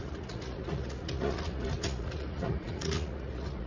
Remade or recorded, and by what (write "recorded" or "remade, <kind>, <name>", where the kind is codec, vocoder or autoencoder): remade, vocoder, Vocos